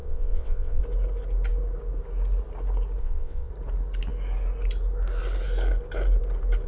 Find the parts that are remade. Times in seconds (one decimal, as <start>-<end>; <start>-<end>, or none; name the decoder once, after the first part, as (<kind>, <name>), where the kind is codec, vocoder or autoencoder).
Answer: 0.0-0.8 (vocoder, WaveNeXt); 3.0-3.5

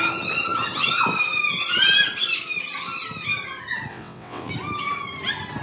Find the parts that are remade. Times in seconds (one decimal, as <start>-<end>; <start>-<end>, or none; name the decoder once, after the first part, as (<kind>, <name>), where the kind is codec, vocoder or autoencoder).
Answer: 3.9-4.5 (vocoder, WaveNeXt)

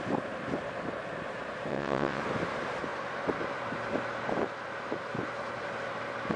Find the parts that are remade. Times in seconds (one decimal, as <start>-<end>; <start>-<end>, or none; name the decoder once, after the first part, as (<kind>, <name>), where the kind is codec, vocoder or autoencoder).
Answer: 1.7-2.2 (vocoder, WaveNeXt)

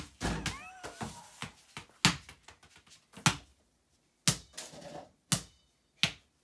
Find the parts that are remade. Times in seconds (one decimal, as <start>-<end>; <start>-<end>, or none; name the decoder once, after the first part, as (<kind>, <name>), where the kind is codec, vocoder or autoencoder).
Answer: none

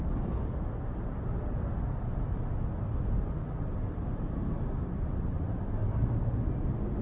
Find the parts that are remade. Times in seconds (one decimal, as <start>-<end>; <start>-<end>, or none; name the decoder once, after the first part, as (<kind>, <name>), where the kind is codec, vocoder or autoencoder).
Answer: none

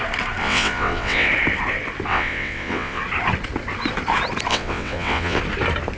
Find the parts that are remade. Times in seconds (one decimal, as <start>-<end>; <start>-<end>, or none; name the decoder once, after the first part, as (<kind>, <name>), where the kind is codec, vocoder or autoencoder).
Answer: 0.4-1.3 (vocoder, WaveNeXt); 2.1-3.0; 4.5-5.4

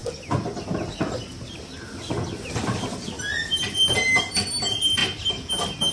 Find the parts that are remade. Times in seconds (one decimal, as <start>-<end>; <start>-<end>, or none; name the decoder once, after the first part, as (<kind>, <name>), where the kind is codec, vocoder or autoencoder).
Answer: none

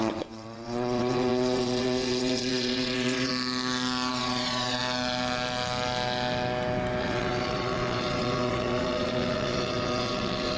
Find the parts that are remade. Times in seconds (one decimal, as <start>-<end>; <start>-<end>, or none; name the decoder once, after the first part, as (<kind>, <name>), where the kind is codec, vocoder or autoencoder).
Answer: 0.0-3.3 (vocoder, WaveNeXt); 4.1-4.8; 7.0-10.6